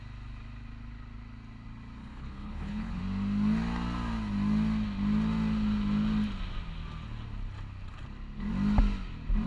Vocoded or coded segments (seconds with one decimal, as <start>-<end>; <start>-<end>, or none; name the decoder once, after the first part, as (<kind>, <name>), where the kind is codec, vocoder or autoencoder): 2.0-3.0 (codec, HILCodec)

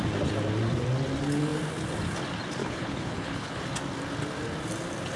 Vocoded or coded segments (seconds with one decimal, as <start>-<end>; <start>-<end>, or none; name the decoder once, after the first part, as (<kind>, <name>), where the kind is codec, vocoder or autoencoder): 2.6-3.6 (codec, HILCodec)

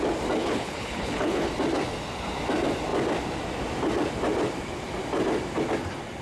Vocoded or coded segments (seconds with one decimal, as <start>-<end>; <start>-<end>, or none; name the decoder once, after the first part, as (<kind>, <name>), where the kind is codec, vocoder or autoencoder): 0.4-1.5 (codec, HILCodec)

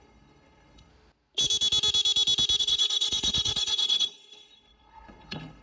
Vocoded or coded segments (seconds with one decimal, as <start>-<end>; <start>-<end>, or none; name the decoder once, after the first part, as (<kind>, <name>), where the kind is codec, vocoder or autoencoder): 0.0-0.9 (codec, HILCodec); 2.6-5.6